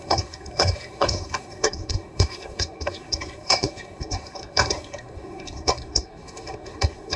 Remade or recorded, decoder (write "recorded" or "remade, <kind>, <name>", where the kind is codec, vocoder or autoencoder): remade, codec, SNAC